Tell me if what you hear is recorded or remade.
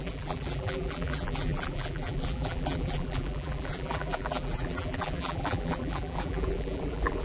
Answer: remade